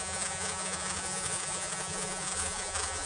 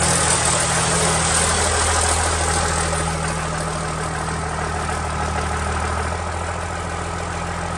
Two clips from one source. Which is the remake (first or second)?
first